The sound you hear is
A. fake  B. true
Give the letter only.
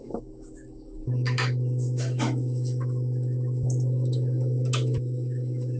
A